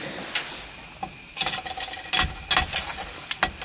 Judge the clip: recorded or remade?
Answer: recorded